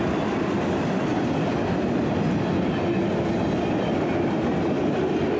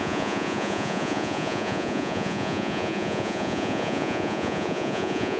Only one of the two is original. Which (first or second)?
first